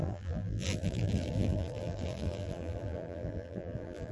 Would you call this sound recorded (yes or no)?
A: no